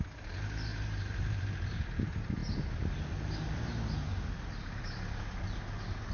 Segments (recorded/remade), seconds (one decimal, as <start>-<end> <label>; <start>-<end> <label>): 0.0-0.7 recorded; 0.7-1.5 remade; 1.5-6.1 recorded